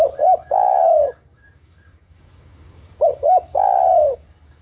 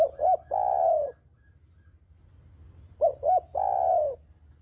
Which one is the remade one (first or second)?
first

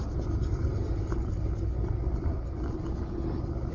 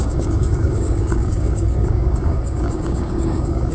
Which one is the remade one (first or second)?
second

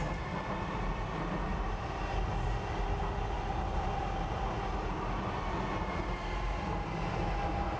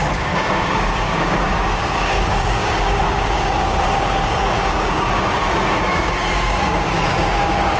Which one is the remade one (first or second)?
second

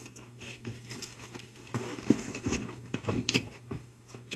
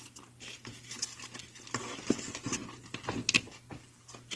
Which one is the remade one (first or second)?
first